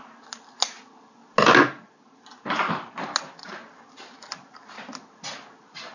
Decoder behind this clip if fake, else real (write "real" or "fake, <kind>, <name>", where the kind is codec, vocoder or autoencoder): real